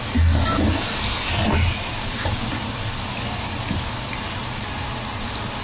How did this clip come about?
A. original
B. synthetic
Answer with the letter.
A